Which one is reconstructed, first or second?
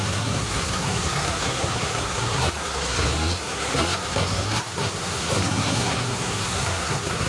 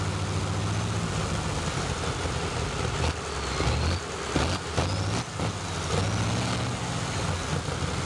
first